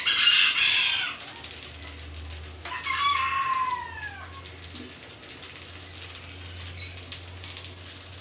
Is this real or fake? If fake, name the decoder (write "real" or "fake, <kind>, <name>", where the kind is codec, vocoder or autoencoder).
real